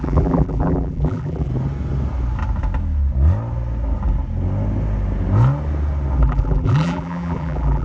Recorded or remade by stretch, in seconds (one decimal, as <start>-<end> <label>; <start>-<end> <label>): 0.0-1.5 remade; 1.5-6.2 recorded; 6.2-7.8 remade